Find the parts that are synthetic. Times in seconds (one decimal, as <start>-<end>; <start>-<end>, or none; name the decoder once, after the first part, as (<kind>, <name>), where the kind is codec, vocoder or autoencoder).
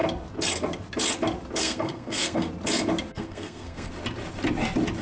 1.6-2.5 (codec, SNAC); 3.1-3.9